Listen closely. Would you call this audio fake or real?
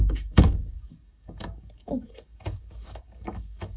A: fake